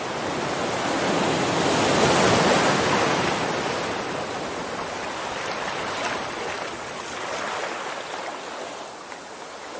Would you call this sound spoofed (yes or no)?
no